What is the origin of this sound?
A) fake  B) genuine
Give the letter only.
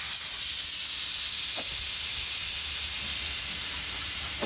B